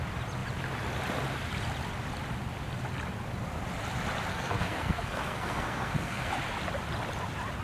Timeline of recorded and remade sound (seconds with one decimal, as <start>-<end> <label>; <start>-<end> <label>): 0.0-4.3 recorded; 4.3-6.3 remade; 6.3-7.6 recorded